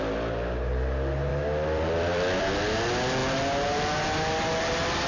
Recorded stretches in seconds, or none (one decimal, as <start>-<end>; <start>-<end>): 0.0-1.3; 2.5-5.1